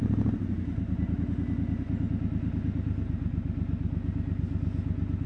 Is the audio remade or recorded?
recorded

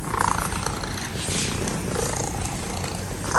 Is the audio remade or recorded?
recorded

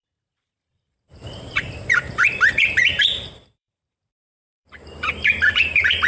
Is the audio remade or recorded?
remade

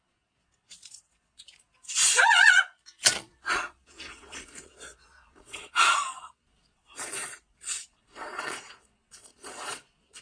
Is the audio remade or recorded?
remade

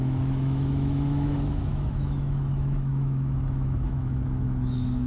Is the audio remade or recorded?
remade